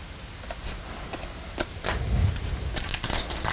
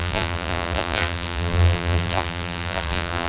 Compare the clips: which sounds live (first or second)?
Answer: first